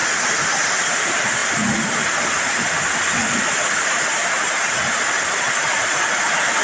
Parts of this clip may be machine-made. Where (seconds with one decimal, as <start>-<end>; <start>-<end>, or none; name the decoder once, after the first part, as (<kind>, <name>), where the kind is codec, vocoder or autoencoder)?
none